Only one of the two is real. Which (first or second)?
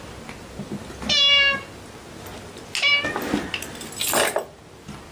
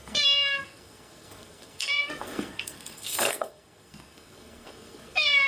first